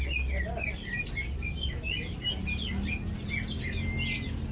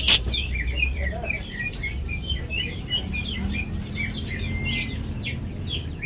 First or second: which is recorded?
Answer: first